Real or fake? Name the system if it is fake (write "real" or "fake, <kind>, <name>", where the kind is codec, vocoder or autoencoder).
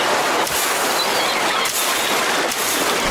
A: real